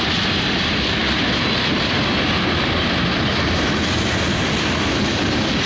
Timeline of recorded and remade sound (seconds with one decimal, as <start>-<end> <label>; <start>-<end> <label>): 0.0-5.7 recorded

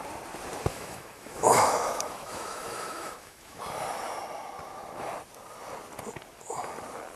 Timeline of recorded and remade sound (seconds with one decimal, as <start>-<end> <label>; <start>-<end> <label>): 0.0-0.7 recorded; 0.7-3.6 remade; 3.6-7.2 recorded